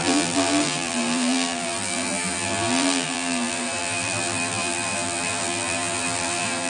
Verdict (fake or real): fake